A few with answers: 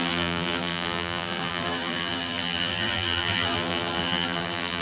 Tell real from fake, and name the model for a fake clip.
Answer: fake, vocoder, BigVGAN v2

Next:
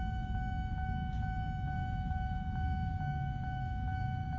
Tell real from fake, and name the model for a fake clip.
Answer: fake, codec, DAC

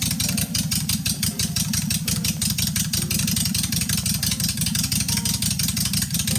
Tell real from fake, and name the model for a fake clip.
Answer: real